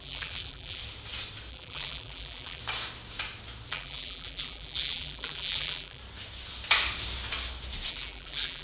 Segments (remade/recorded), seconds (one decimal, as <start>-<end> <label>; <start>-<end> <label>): 0.0-0.8 remade; 0.8-1.5 recorded; 1.5-2.6 remade; 2.6-3.7 recorded; 3.7-6.0 remade; 6.0-7.9 recorded; 7.9-8.6 remade